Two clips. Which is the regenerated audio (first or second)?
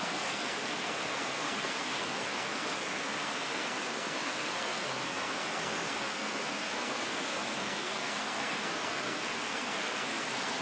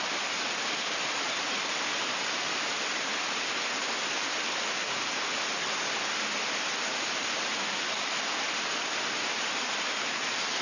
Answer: first